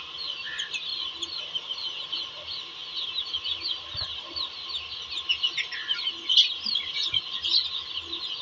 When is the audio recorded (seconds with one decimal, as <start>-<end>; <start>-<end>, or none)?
0.0-8.4